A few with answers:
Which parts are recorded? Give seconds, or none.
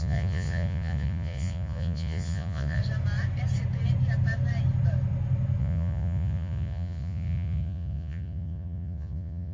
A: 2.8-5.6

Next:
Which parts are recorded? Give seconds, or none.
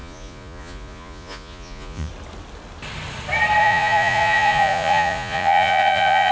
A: 2.1-3.6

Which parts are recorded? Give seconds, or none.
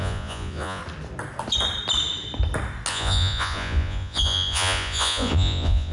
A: 0.8-2.9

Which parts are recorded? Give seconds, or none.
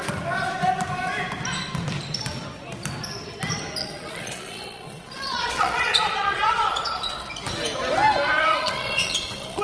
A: 0.0-3.8; 7.3-8.5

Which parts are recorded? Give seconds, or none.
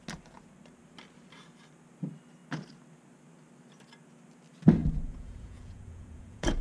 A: 0.0-4.8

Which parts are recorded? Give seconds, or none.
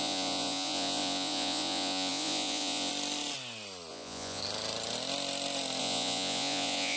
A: 2.9-3.9; 4.4-5.8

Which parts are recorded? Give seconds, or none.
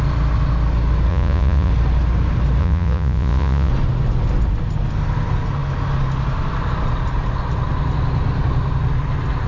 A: 0.0-1.1; 1.7-2.6; 3.7-9.5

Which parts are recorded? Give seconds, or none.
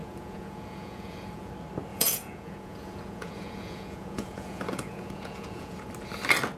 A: 1.5-1.9; 5.9-6.6